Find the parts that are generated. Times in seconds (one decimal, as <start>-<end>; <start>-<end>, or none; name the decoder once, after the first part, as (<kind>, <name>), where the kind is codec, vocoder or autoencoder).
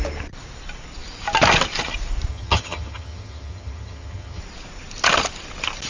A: 2.3-4.4 (vocoder, HiFi-GAN)